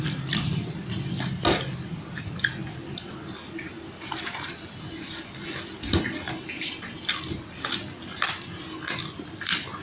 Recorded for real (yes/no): yes